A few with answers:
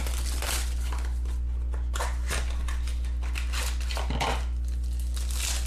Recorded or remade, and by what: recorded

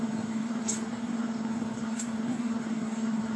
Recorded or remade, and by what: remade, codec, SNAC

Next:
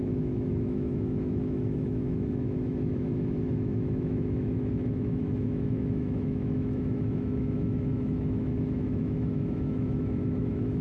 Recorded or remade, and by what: remade, autoencoder, DAC-VAE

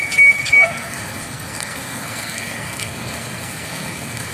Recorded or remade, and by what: remade, codec, SNAC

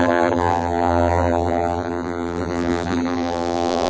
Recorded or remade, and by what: remade, vocoder, BigVGAN v2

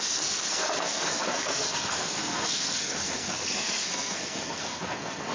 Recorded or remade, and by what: remade, codec, SNAC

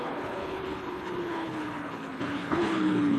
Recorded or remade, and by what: remade, codec, HILCodec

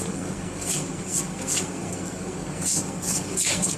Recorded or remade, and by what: remade, codec, SNAC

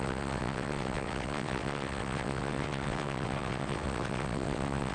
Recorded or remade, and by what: remade, vocoder, WaveNeXt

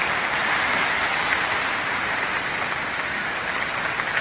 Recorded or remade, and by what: recorded